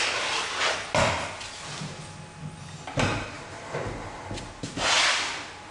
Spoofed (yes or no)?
no